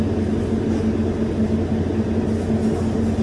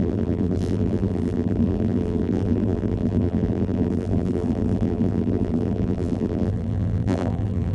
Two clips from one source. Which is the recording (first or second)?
first